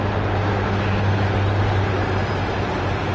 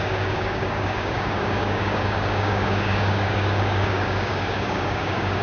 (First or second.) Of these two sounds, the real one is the first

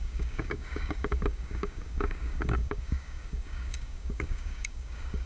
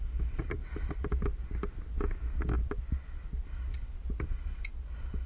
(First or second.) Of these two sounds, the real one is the second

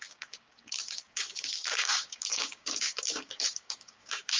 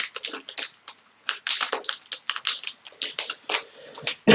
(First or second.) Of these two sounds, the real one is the second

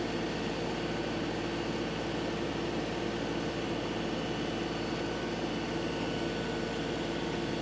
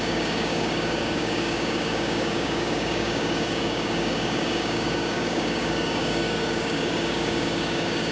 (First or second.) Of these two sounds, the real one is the first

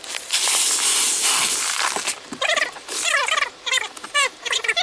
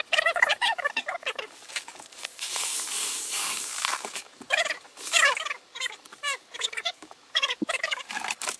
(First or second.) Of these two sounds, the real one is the first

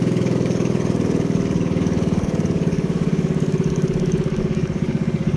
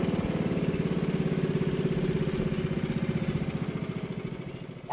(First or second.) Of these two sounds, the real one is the second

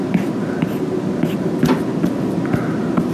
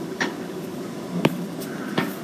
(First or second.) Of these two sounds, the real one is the first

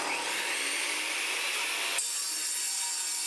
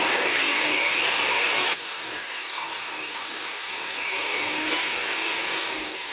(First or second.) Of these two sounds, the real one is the first